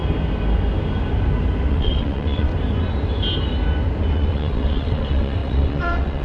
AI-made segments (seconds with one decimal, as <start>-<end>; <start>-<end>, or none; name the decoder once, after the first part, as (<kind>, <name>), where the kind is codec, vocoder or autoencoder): 1.7-2.5 (vocoder, WaveNeXt); 4.1-6.2